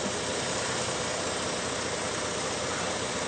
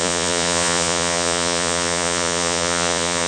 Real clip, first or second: first